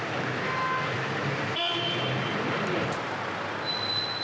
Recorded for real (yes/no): yes